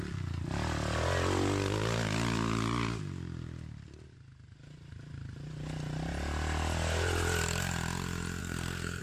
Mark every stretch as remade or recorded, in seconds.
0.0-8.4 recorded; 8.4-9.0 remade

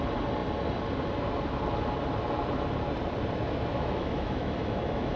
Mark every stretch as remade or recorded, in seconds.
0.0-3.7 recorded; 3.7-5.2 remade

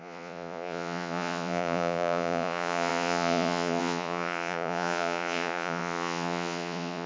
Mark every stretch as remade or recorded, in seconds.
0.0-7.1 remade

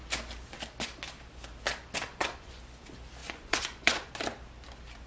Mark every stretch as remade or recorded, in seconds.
0.0-2.1 recorded; 2.1-2.6 remade; 2.6-3.2 recorded; 3.2-4.1 remade; 4.1-5.1 recorded

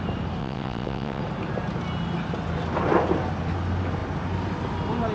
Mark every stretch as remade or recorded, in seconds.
0.0-0.4 recorded; 0.4-1.2 remade; 1.2-5.1 recorded